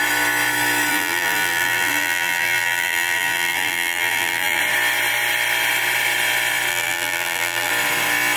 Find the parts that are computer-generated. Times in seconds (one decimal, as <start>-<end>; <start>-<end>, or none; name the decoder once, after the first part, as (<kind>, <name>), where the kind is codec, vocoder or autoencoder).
0.9-4.6 (vocoder, BigVGAN v2); 6.7-7.7